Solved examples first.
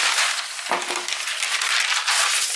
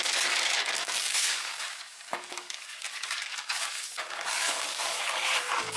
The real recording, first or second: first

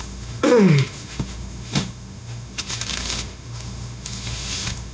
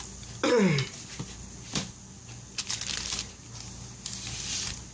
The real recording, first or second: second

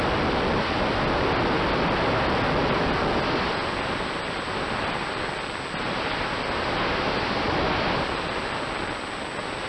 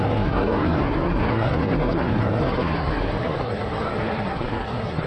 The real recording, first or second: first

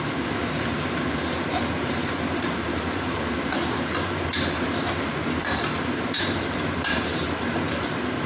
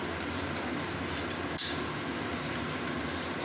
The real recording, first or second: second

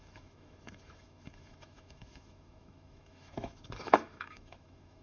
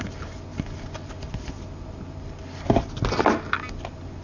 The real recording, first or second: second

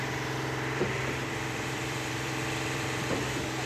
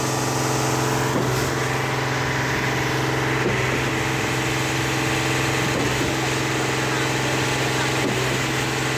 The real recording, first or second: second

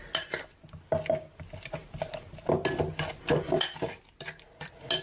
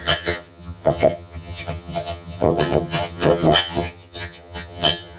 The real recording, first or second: first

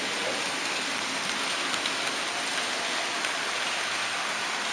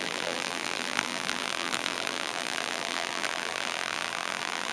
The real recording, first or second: first